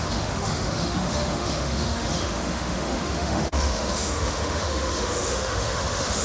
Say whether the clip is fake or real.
fake